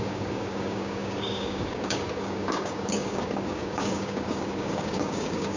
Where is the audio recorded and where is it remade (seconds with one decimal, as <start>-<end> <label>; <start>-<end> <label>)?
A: 0.0-5.6 remade